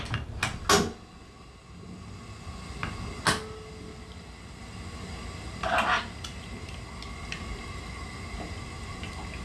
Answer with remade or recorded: recorded